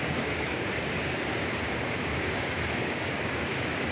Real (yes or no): no